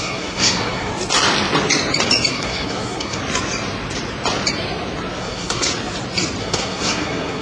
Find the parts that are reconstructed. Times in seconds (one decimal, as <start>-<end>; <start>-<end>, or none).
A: 0.0-0.9; 2.3-3.2; 5.2-5.7; 6.4-7.4